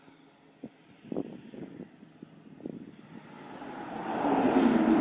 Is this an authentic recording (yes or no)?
yes